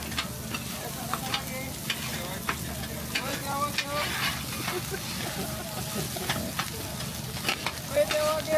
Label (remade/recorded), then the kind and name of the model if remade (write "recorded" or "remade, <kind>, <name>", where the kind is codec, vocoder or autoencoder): recorded